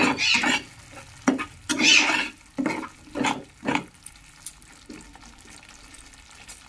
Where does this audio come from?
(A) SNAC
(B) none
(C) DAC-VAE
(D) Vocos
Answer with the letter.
B